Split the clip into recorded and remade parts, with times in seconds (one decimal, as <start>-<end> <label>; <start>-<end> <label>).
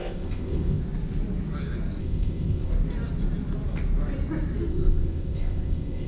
0.0-0.8 remade; 0.8-2.0 recorded; 2.0-2.7 remade; 2.7-4.7 recorded; 4.7-6.1 remade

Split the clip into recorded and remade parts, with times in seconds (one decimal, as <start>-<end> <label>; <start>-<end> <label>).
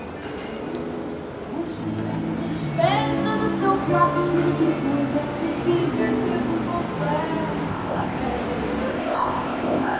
0.0-7.7 recorded; 7.7-8.2 remade; 8.2-8.9 recorded; 8.9-10.0 remade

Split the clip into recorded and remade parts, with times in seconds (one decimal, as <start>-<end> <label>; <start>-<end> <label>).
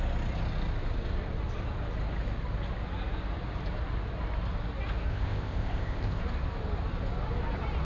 0.0-5.1 recorded; 5.1-6.2 remade; 6.2-7.8 recorded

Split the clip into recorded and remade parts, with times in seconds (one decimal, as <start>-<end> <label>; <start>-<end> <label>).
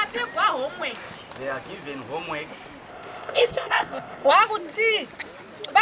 0.0-2.9 recorded; 2.9-4.3 remade; 4.3-5.8 recorded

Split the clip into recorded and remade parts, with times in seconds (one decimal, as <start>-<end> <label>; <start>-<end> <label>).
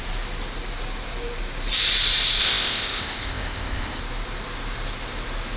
0.0-2.4 recorded; 2.4-4.0 remade; 4.0-5.6 recorded